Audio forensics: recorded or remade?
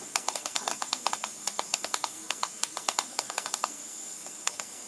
remade